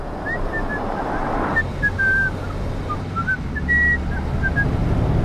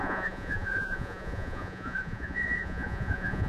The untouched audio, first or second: first